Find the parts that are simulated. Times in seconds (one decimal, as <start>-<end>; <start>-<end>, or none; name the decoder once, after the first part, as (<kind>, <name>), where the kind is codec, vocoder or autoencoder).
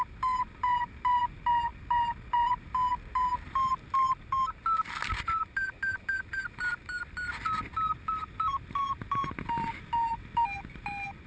none